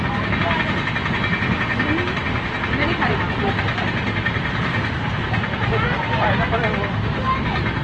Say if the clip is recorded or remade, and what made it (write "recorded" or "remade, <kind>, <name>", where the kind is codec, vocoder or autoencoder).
recorded